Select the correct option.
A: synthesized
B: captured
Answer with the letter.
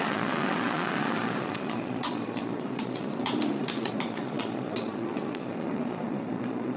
A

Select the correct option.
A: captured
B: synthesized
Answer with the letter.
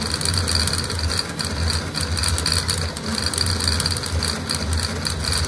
A